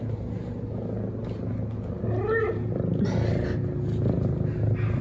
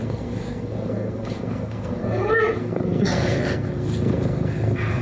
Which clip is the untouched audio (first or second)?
first